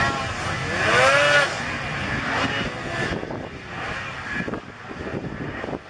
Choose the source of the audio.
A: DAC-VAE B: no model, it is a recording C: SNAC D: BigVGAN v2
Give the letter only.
B